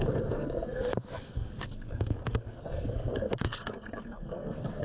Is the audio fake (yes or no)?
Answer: yes